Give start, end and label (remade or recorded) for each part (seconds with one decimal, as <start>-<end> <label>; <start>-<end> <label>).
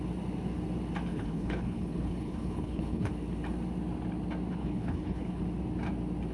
0.0-1.1 recorded; 1.1-3.1 remade; 3.1-4.6 recorded; 4.6-5.4 remade; 5.4-6.3 recorded